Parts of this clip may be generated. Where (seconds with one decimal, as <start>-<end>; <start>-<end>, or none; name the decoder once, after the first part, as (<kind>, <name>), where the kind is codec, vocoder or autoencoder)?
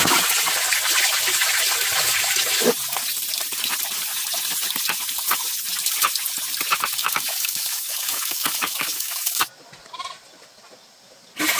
7.0-9.4 (codec, DAC)